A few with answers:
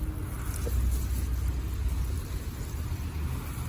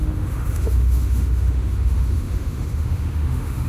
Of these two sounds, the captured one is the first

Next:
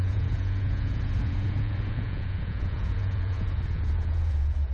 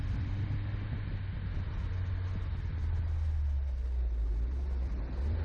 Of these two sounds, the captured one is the second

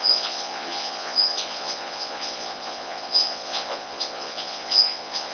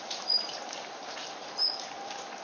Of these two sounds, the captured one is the second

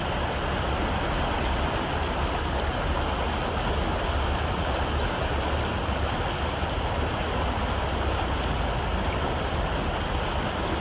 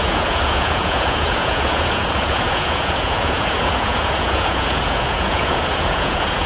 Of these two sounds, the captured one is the first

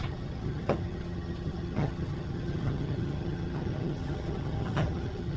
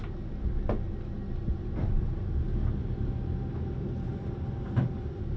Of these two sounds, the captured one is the second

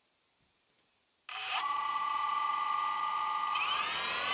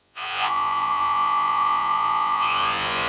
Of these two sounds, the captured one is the first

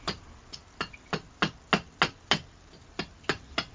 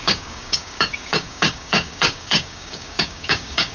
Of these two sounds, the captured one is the first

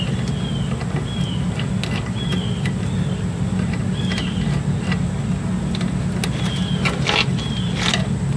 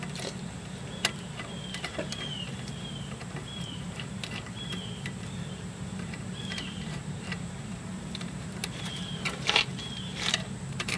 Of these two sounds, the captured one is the first